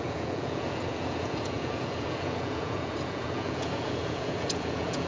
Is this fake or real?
fake